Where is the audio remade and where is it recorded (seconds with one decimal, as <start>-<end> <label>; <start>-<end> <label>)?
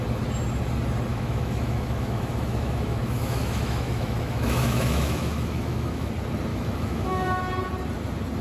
0.0-1.1 recorded; 1.1-6.1 remade; 6.1-6.5 recorded; 6.5-7.4 remade; 7.4-8.4 recorded